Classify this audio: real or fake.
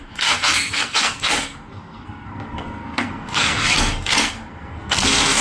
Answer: fake